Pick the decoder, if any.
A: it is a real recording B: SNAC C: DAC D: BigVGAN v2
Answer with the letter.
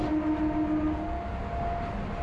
A